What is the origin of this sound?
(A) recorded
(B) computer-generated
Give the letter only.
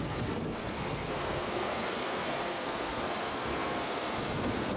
B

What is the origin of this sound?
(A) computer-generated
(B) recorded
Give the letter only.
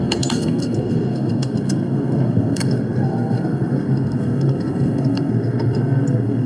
A